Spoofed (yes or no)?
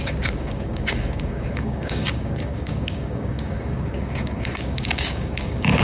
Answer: yes